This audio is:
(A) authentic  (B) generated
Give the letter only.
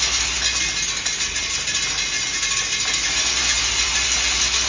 A